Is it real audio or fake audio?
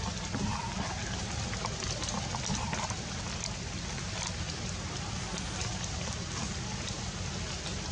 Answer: real